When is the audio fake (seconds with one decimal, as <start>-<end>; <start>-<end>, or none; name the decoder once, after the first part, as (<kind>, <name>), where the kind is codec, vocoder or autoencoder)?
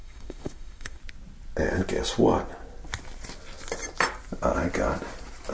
0.0-1.0 (autoencoder, DAC-VAE)